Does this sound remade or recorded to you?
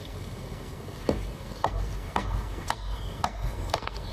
remade